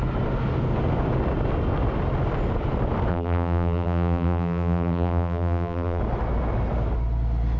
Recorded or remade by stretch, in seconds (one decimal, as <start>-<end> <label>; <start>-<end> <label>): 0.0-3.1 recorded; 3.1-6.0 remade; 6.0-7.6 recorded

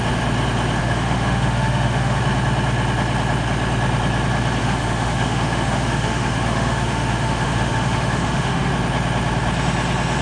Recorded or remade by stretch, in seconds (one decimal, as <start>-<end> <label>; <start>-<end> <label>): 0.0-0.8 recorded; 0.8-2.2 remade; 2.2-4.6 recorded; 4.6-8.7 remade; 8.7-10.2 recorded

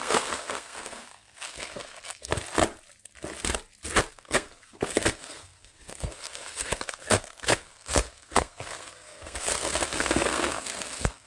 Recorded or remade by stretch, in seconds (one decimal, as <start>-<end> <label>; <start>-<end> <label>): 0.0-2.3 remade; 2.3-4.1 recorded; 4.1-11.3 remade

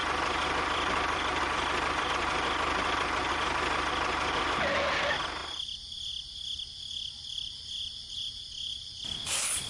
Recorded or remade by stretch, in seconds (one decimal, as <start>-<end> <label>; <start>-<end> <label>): 0.0-3.9 remade; 3.9-9.7 recorded

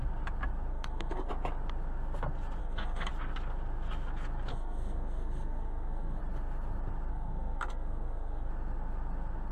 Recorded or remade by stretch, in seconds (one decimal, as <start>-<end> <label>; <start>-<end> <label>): 0.0-0.7 recorded; 0.7-1.3 remade; 1.3-2.6 recorded; 2.6-3.1 remade; 3.1-4.5 recorded; 4.5-6.2 remade; 6.2-7.1 recorded; 7.1-8.5 remade; 8.5-9.5 recorded

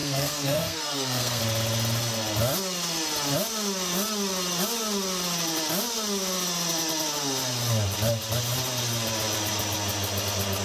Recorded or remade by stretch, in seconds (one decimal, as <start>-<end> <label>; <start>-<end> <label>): 0.0-1.4 remade; 1.4-10.6 recorded